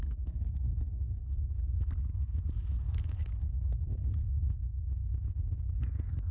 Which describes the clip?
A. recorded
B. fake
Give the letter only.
B